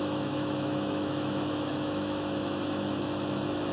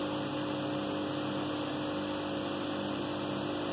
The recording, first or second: second